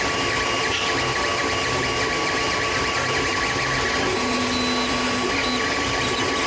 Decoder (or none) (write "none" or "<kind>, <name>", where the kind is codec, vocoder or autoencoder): none